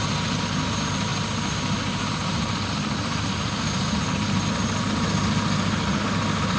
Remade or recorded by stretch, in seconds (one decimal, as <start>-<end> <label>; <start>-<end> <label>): 0.0-6.6 recorded